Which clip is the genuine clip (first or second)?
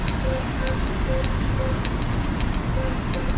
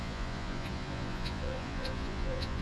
first